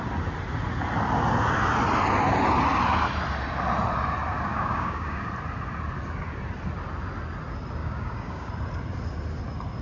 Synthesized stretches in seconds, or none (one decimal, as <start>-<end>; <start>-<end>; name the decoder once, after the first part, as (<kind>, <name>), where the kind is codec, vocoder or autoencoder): 4.5-5.3 (codec, DAC); 7.8-8.5